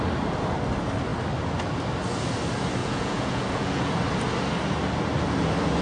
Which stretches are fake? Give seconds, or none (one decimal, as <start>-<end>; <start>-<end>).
2.8-4.0